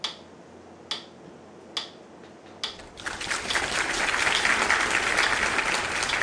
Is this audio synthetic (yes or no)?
no